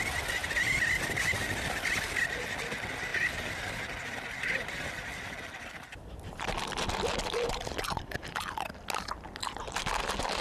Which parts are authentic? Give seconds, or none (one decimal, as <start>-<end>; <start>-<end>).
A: 0.0-0.4; 2.5-3.1; 8.3-10.4